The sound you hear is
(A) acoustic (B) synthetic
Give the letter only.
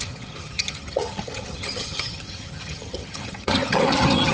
B